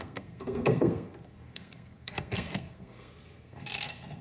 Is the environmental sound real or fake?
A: fake